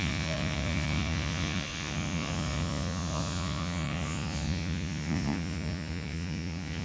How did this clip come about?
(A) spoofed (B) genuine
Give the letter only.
A